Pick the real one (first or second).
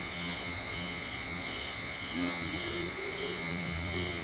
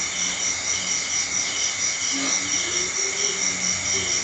second